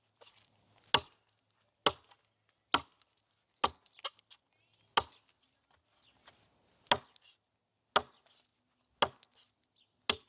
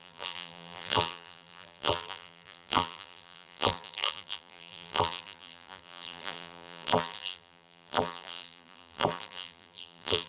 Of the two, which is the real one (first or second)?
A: first